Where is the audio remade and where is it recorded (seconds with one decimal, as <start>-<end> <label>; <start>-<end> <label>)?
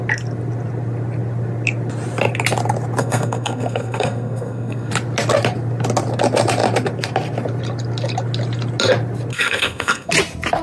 0.0-3.0 recorded; 3.0-4.9 remade; 4.9-9.3 recorded; 9.3-10.1 remade; 10.1-10.6 recorded